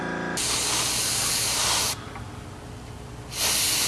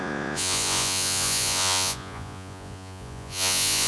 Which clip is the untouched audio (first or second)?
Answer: first